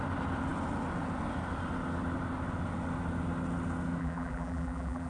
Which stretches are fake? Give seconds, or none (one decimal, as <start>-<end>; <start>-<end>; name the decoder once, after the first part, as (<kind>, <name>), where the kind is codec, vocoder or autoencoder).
4.0-5.1 (vocoder, BigVGAN v2)